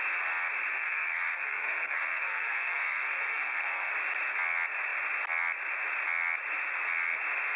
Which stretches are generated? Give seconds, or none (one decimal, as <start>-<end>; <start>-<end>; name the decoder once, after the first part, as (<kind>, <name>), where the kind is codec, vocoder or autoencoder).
0.7-3.9 (codec, SNAC)